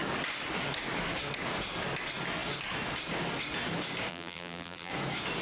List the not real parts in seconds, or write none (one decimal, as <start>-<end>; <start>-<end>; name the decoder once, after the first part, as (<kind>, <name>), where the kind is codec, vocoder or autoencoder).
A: 4.1-4.9 (vocoder, BigVGAN v2)